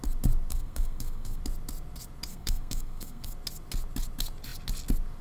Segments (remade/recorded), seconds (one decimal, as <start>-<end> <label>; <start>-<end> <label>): 0.0-0.5 recorded; 0.5-1.4 remade; 1.4-2.3 recorded; 2.3-3.3 remade; 3.3-5.2 recorded